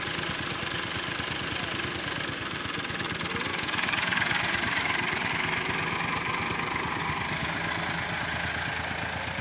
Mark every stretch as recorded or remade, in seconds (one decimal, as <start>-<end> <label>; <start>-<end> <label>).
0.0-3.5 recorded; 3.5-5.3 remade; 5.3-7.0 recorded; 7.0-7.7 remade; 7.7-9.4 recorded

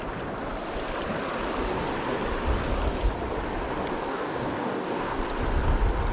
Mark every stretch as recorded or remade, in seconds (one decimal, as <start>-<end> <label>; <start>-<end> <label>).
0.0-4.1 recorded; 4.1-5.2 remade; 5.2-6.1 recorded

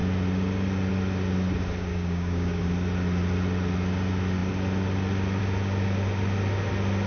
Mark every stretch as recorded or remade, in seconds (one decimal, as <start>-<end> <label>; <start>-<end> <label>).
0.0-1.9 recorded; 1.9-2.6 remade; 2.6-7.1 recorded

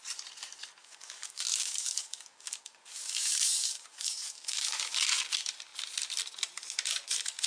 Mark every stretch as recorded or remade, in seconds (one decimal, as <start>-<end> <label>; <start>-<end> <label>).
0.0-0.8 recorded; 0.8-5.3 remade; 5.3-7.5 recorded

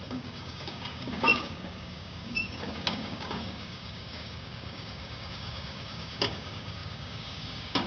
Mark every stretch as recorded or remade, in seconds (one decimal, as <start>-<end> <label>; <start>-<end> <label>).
0.0-7.9 remade